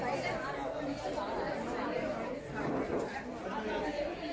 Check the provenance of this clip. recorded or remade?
recorded